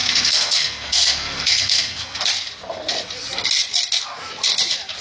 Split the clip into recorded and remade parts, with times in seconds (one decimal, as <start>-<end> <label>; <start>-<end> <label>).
0.0-2.2 remade; 2.2-5.0 recorded